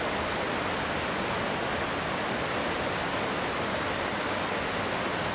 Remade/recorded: recorded